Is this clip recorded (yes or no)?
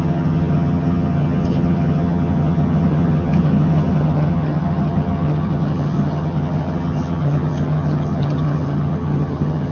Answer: no